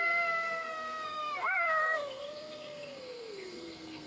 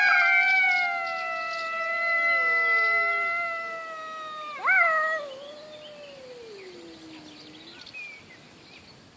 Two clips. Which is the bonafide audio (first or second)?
second